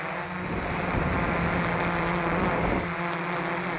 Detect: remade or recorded recorded